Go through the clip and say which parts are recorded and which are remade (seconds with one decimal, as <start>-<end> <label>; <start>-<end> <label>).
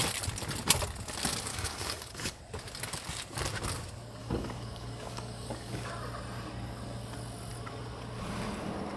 0.0-1.5 recorded; 1.5-2.4 remade; 2.4-4.2 recorded; 4.2-5.9 remade; 5.9-9.0 recorded